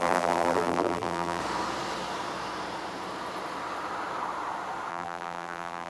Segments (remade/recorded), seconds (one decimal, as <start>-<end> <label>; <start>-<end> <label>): 0.0-1.4 remade; 1.4-4.9 recorded; 4.9-5.9 remade